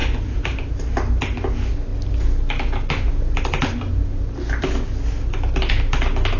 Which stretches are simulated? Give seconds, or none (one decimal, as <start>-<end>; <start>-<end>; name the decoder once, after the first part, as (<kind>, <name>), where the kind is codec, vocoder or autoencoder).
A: 0.0-0.7 (vocoder, BigVGAN v2)